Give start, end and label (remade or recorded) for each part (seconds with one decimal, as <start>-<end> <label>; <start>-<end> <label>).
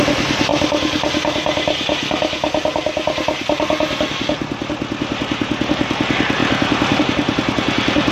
0.0-8.1 recorded